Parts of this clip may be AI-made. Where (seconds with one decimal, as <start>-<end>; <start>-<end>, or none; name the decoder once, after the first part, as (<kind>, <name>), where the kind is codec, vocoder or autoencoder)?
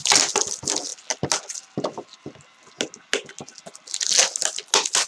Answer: none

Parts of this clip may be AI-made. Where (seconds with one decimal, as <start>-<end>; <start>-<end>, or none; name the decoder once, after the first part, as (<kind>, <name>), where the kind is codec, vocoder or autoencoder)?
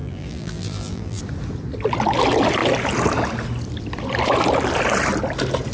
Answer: 0.0-1.2 (vocoder, BigVGAN v2)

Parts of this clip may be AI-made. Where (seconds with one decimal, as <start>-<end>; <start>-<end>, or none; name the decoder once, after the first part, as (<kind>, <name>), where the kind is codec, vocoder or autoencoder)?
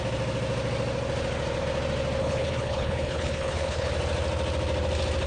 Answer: 2.2-3.9 (codec, HILCodec)